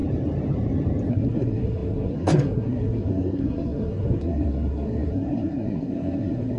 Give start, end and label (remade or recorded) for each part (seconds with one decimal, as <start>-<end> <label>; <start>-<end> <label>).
0.0-1.1 recorded; 1.1-6.6 remade